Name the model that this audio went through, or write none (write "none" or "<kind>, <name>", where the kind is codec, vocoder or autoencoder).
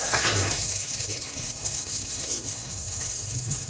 codec, SNAC